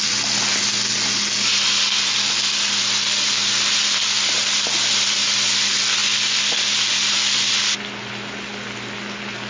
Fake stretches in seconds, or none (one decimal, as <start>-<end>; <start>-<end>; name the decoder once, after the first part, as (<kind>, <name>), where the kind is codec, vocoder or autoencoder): none